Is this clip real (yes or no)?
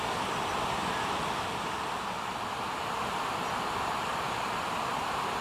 no